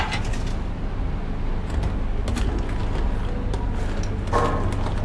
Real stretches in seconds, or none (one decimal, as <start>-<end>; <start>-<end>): 0.0-5.0